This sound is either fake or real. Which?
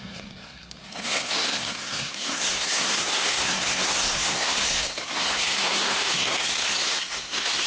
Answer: fake